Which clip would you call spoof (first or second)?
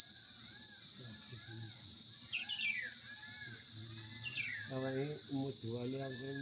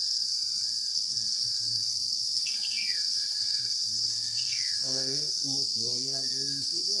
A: second